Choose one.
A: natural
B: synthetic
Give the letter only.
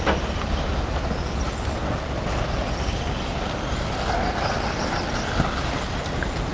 A